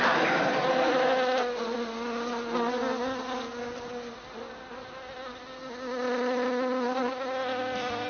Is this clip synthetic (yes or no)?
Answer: no